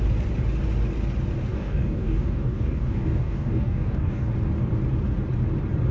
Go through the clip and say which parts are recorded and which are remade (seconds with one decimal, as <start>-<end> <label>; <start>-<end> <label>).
0.0-1.5 recorded; 1.5-4.3 remade; 4.3-5.9 recorded